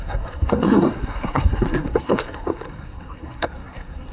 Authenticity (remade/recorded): remade